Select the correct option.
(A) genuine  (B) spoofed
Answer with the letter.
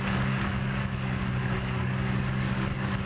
B